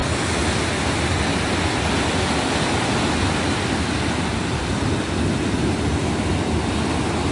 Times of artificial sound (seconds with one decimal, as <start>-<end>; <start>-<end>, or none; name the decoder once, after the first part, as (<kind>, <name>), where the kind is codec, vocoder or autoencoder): none

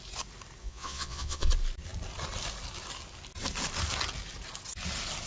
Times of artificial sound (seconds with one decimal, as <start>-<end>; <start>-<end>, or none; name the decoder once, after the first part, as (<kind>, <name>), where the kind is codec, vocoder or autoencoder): 0.6-1.5 (vocoder, Vocos)

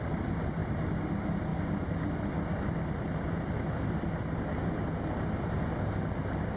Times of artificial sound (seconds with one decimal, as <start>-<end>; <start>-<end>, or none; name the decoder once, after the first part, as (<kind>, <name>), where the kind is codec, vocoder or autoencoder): 0.6-1.1 (vocoder, BigVGAN v2)

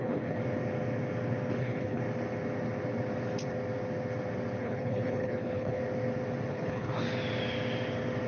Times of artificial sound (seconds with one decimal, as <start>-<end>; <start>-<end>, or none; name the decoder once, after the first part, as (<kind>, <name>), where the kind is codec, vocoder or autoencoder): 0.0-0.4 (codec, HILCodec); 1.6-2.0; 4.6-5.8; 6.5-6.9

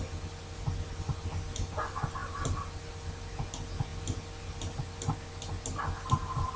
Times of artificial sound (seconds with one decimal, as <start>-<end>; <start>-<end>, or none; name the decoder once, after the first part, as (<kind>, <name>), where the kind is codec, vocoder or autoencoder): none

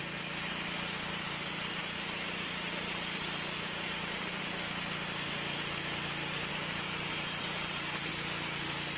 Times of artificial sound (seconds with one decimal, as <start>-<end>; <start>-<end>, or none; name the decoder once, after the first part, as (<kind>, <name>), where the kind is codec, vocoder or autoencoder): 1.8-4.4 (vocoder, BigVGAN v2); 6.5-8.1

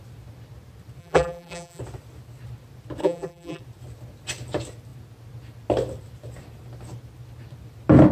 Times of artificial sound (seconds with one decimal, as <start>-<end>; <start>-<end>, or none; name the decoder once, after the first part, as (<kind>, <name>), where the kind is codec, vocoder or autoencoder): 1.0-1.8 (vocoder, BigVGAN v2); 3.0-3.6

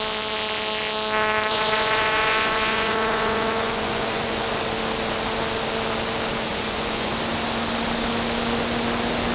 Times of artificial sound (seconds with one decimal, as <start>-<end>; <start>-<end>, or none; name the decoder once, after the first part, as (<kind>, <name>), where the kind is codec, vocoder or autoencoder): 1.5-4.6 (vocoder, Vocos); 6.5-7.1